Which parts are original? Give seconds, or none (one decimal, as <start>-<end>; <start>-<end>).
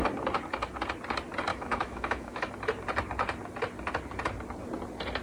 0.0-1.5; 2.5-5.2